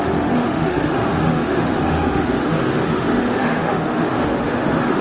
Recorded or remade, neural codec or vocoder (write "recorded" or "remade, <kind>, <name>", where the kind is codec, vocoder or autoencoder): remade, autoencoder, DAC-VAE